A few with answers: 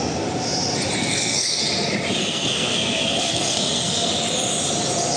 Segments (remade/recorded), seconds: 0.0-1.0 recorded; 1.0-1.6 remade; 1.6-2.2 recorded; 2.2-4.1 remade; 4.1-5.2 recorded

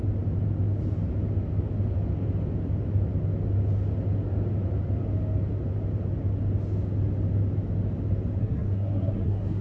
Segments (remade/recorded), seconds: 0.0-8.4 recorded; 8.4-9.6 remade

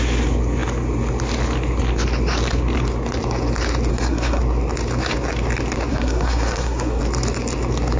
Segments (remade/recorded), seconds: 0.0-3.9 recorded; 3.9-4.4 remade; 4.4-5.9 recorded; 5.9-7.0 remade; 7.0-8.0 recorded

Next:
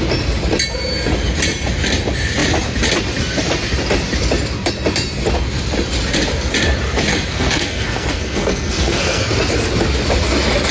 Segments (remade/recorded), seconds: 0.0-7.1 recorded; 7.1-9.3 remade; 9.3-10.7 recorded